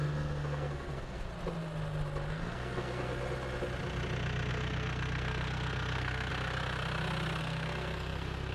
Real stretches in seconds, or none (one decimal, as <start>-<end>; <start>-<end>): 1.3-2.3; 3.1-4.5; 6.3-7.4